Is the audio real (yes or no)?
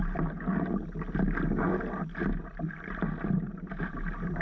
yes